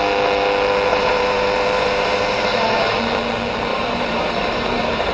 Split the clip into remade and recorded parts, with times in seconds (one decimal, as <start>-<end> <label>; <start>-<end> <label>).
0.0-0.9 recorded; 0.9-2.8 remade; 2.8-3.7 recorded; 3.7-5.1 remade